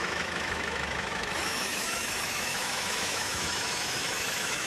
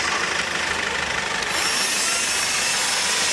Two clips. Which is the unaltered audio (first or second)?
second